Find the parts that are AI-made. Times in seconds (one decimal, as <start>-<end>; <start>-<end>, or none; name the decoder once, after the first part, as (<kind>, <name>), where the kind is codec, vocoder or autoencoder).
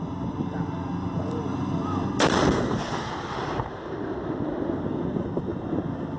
none